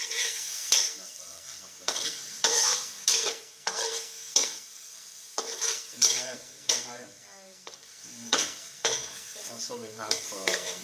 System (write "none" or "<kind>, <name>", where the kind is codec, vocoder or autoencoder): codec, SNAC